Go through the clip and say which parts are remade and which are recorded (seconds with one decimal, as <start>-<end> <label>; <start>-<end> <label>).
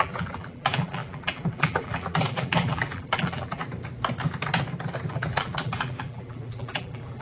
0.0-3.6 remade; 3.6-5.1 recorded; 5.1-7.2 remade